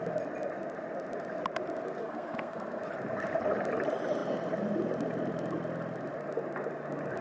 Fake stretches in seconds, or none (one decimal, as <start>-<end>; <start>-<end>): 2.0-2.8